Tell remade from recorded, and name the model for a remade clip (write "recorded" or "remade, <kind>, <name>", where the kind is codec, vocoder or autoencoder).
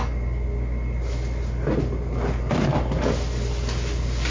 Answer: recorded